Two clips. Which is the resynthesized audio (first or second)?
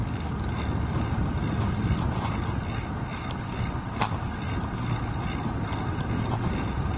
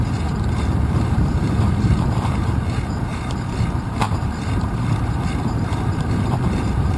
second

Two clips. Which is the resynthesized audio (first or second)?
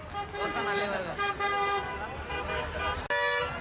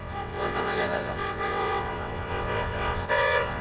second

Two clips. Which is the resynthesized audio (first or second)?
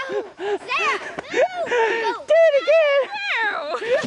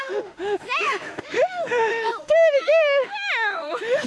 second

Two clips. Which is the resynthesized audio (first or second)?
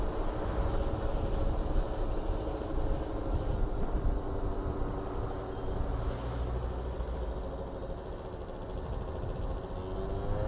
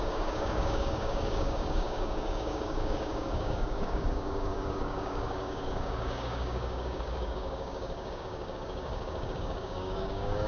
second